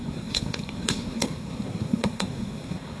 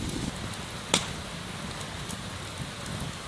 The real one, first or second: second